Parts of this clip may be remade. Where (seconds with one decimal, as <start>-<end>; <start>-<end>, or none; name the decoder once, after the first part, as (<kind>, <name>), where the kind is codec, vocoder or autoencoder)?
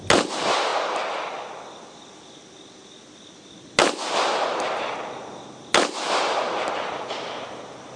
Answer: none